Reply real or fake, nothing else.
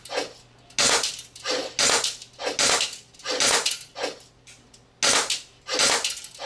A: real